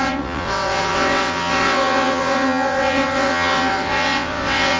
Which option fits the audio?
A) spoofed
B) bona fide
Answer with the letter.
A